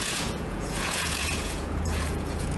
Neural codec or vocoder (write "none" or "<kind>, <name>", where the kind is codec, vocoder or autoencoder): vocoder, Vocos